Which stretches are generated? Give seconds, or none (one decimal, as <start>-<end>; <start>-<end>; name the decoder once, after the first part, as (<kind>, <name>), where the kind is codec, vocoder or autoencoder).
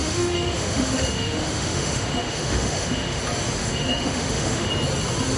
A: 0.0-3.2 (autoencoder, DAC-VAE); 3.6-4.7